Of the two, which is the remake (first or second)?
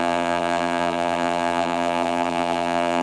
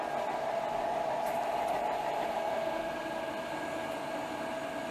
first